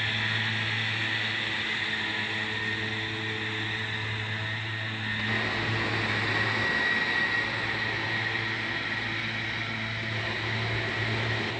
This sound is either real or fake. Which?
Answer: real